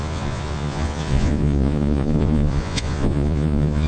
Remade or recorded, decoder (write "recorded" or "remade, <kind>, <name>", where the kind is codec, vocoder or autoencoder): remade, vocoder, Vocos